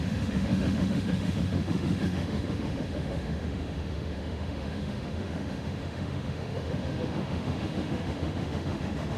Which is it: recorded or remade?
remade